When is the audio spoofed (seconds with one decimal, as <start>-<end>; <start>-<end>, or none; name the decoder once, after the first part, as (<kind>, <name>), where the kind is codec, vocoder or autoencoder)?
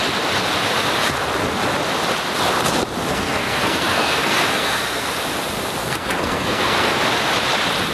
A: 3.1-5.1 (codec, SNAC); 5.8-7.0